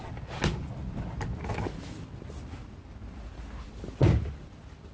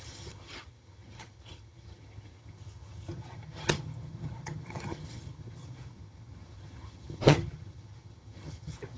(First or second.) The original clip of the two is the first